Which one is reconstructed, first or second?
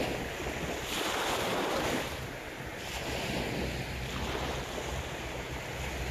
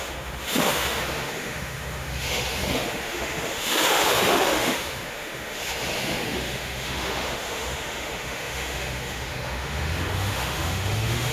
second